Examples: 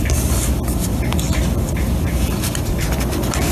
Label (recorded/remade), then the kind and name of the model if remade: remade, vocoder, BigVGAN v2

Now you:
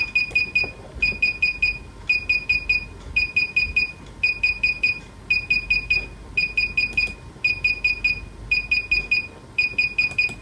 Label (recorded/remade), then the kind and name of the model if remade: recorded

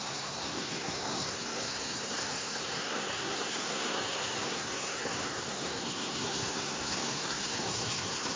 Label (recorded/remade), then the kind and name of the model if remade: remade, codec, SNAC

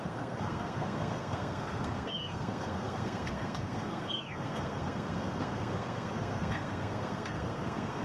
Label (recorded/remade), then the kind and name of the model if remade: remade, codec, SNAC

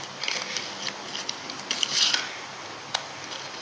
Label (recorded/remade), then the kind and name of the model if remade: recorded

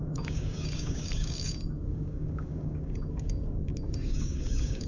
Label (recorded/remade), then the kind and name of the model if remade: remade, codec, DAC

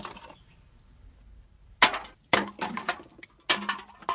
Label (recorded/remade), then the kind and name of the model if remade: recorded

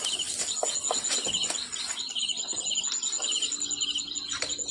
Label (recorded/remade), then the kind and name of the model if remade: recorded